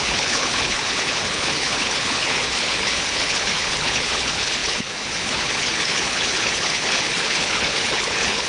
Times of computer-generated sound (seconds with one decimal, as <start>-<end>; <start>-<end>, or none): 0.0-8.5